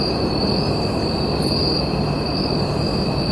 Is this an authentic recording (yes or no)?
yes